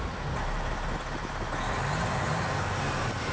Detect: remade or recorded recorded